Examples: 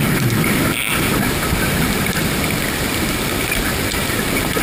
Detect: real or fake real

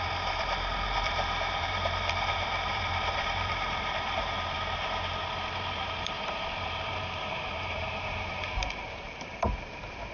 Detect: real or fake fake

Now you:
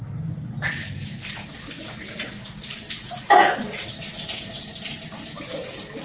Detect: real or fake real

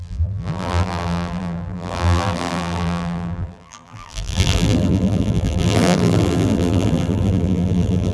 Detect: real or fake fake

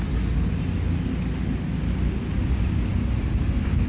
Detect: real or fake real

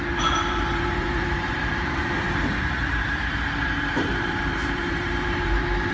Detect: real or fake fake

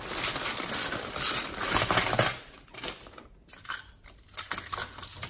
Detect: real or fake real